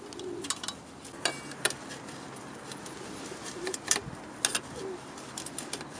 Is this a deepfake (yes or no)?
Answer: no